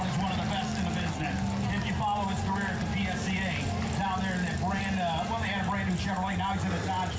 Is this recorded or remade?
recorded